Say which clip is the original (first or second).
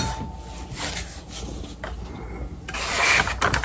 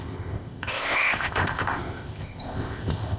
first